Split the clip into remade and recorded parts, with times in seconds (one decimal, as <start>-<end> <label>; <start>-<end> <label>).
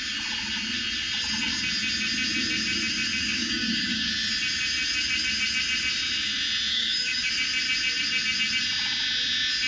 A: 0.0-3.2 recorded; 3.2-4.1 remade; 4.1-6.7 recorded; 6.7-7.3 remade; 7.3-9.7 recorded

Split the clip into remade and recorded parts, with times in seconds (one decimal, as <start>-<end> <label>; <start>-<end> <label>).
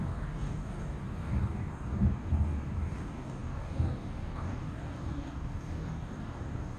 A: 0.0-6.8 remade